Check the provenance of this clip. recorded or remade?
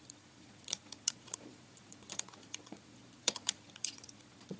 remade